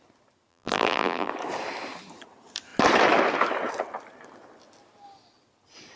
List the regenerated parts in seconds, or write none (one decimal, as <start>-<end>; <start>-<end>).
0.5-1.3